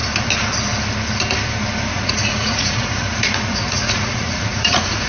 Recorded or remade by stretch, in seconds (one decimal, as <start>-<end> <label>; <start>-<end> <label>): 0.0-1.9 recorded; 1.9-5.1 remade